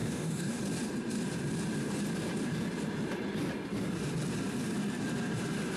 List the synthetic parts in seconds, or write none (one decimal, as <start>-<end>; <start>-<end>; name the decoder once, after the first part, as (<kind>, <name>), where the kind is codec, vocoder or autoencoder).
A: 0.0-0.6 (codec, DAC)